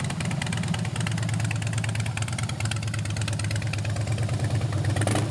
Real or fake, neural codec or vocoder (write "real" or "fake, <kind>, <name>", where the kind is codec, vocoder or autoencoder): real